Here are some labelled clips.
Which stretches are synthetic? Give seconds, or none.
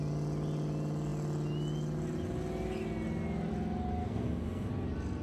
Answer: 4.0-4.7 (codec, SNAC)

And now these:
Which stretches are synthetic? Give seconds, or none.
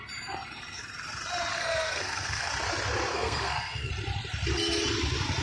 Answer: 1.5-2.5 (codec, SNAC); 3.1-3.9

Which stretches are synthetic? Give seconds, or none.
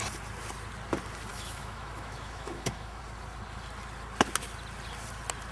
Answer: 1.3-3.0 (autoencoder, DAC-VAE)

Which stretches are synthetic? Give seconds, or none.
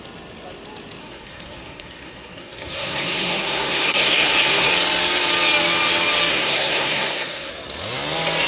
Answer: 1.0-4.7 (codec, SNAC); 6.3-7.5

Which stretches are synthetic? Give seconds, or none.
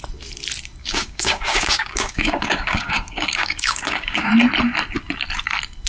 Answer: 0.8-4.3 (codec, DAC)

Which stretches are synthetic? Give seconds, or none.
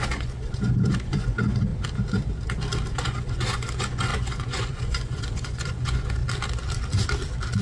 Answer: 0.0-1.7 (vocoder, Vocos); 2.9-6.2